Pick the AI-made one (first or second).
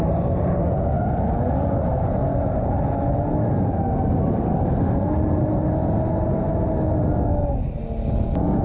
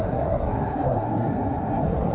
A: second